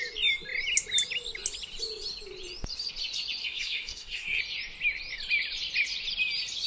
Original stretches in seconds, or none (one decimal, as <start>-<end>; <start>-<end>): 0.0-3.4; 4.4-6.7